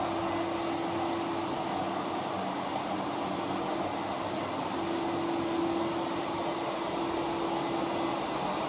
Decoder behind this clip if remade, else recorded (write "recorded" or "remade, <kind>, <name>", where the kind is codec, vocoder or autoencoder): recorded